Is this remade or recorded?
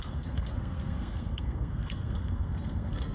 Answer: remade